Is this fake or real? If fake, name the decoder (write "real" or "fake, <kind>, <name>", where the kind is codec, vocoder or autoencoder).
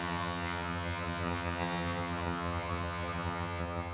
fake, vocoder, HiFi-GAN